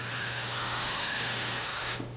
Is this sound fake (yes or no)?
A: yes